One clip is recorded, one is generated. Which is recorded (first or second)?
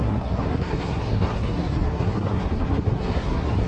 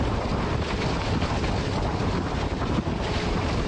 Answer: second